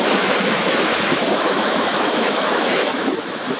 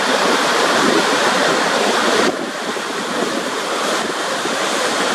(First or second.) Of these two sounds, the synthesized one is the first